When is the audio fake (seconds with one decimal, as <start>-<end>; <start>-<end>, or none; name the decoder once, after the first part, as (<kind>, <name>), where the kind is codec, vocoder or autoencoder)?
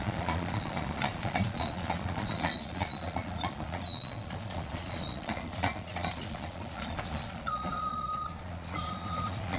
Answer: 0.0-9.6 (vocoder, Vocos)